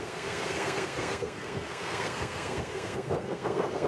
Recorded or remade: remade